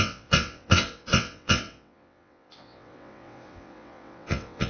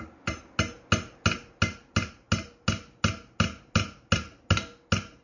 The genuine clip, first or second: second